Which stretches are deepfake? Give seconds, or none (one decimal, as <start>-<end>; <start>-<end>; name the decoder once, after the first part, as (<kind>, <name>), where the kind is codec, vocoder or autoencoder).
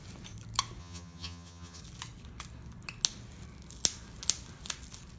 0.8-1.8 (vocoder, HiFi-GAN)